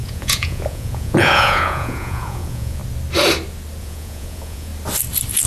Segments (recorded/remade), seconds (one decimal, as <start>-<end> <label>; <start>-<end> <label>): 0.0-2.8 remade; 2.8-3.8 recorded; 3.8-4.7 remade; 4.7-5.5 recorded